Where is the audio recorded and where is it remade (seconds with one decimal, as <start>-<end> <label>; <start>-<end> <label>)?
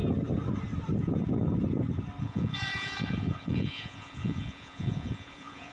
0.0-2.2 recorded; 2.2-5.7 remade